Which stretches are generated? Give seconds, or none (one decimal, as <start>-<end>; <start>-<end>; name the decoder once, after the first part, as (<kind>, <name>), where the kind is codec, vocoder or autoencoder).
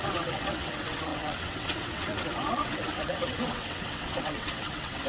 0.0-5.1 (vocoder, WaveNeXt)